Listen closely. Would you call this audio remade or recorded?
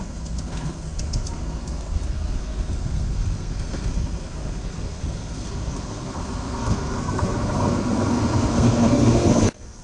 remade